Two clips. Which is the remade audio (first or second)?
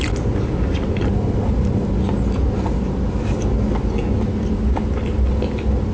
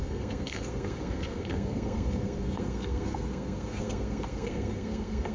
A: second